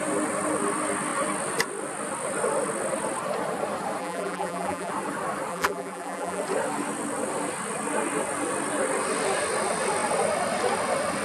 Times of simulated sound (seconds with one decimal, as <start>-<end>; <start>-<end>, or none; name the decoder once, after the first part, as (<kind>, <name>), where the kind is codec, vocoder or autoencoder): 4.0-4.9 (vocoder, BigVGAN v2); 5.5-6.4